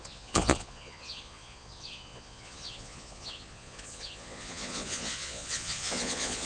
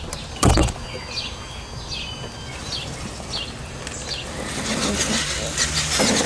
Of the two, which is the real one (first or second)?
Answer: second